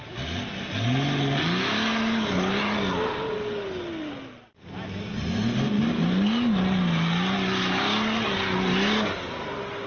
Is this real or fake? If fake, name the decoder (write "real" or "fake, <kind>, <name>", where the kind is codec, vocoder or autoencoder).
real